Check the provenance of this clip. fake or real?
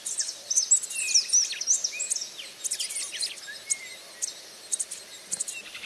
real